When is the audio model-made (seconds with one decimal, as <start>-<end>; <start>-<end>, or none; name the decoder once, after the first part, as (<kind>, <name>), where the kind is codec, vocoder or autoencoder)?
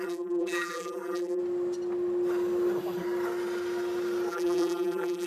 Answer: 0.0-1.4 (vocoder, BigVGAN v2); 4.3-5.3